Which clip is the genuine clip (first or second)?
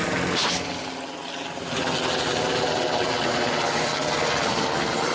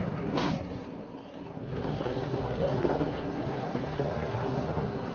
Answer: first